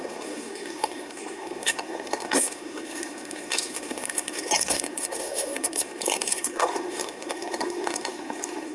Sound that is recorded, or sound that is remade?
remade